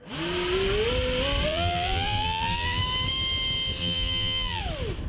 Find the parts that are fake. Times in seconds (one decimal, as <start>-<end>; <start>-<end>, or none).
1.5-2.8; 3.8-4.6